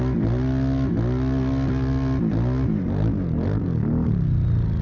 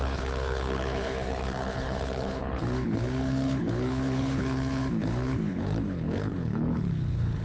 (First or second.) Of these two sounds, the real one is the first